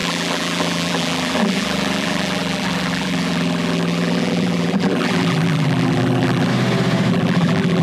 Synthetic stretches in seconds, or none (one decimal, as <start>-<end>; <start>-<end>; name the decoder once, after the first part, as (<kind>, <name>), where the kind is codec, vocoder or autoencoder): 0.0-6.5 (vocoder, BigVGAN v2); 7.1-7.8